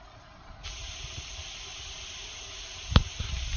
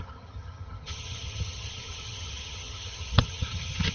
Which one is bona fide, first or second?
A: first